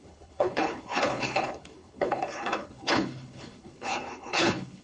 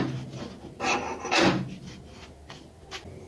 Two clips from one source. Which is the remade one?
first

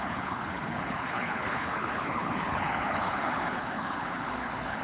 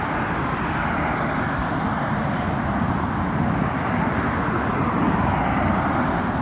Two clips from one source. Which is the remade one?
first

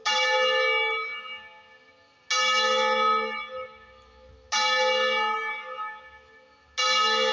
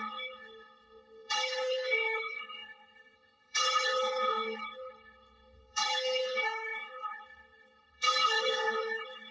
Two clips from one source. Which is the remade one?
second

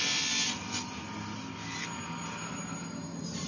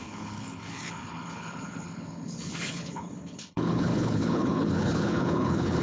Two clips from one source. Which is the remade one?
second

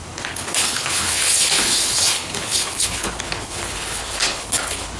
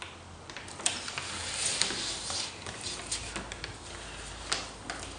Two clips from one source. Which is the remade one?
first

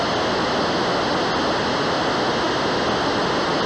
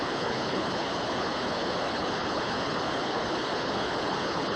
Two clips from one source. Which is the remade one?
second